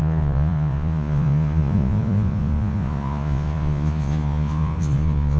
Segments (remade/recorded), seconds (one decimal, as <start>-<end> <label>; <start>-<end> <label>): 0.0-5.4 remade